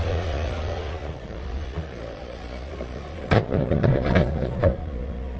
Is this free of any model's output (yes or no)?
no